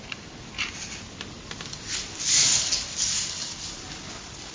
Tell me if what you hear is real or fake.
real